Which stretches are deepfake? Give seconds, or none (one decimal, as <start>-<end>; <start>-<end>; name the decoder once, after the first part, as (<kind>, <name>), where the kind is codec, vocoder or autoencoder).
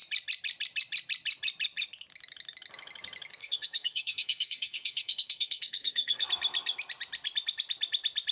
3.4-6.3 (codec, SNAC)